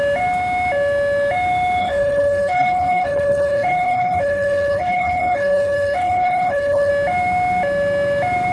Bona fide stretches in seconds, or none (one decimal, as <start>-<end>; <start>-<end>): 0.0-1.8; 6.9-8.5